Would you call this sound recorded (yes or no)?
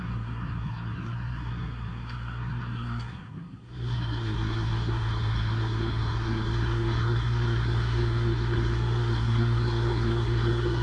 no